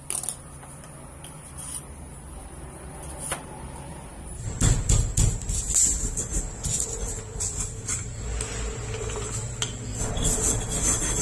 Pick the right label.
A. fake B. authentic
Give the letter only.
B